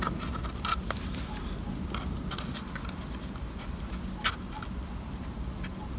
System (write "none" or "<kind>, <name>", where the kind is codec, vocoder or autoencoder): none